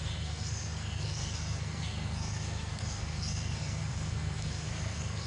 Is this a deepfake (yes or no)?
yes